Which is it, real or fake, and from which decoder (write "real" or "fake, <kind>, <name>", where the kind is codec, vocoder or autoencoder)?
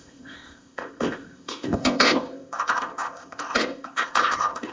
fake, codec, ZipCodec